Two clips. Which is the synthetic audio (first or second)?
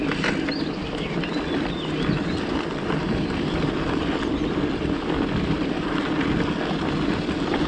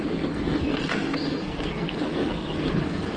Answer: second